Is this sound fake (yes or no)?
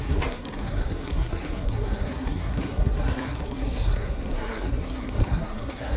yes